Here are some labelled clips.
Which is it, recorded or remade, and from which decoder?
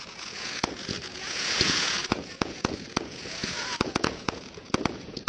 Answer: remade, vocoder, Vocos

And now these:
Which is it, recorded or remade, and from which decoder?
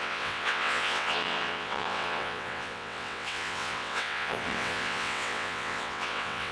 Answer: remade, vocoder, WaveNeXt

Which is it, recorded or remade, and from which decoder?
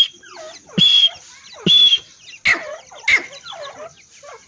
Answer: recorded